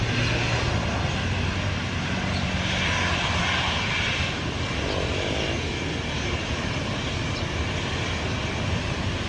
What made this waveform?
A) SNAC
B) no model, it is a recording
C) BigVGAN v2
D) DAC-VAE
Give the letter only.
B